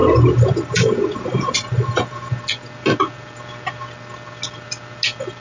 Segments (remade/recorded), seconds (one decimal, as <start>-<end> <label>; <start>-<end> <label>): 0.0-2.3 remade; 2.3-5.4 recorded